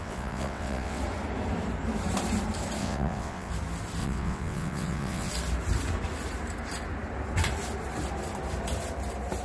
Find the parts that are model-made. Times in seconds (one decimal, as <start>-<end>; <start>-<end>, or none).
0.0-1.0; 2.8-3.5; 4.0-5.3